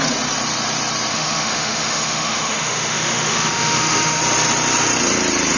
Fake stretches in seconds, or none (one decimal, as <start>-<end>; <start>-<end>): 1.1-4.2